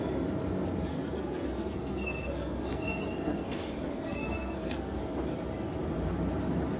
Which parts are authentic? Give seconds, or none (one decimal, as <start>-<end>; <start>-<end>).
0.0-0.9; 5.0-6.8